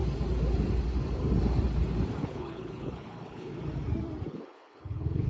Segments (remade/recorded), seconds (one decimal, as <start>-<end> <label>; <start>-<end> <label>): 0.0-2.2 recorded; 2.2-3.5 remade; 3.5-4.3 recorded; 4.3-5.3 remade